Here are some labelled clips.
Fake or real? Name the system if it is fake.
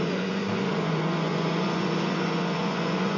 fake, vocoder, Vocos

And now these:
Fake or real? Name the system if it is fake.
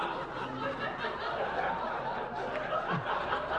real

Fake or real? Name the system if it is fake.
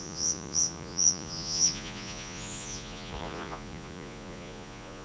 fake, vocoder, Vocos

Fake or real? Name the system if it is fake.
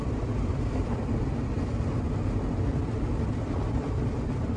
real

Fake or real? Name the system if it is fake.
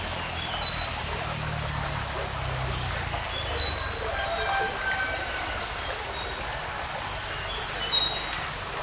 real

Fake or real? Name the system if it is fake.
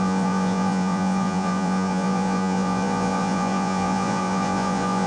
fake, vocoder, Vocos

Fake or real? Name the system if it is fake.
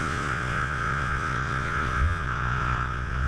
fake, vocoder, Vocos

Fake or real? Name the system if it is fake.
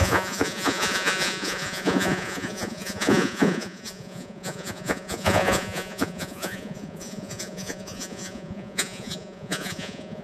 fake, vocoder, Vocos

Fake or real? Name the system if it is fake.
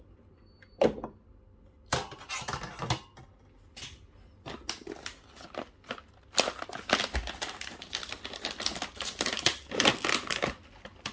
real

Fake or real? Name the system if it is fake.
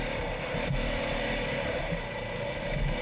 real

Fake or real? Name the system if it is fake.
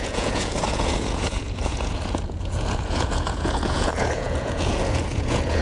fake, vocoder, Vocos